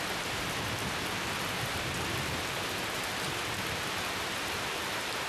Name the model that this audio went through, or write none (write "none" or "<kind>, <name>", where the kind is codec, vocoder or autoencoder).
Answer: none